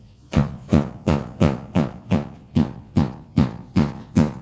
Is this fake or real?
fake